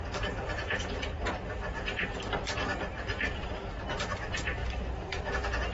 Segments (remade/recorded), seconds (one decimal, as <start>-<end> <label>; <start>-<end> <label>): 0.0-4.6 recorded; 4.6-5.3 remade; 5.3-5.7 recorded